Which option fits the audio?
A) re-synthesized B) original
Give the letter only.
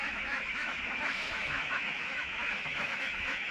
A